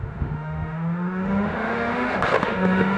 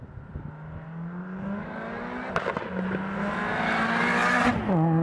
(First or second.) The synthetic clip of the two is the first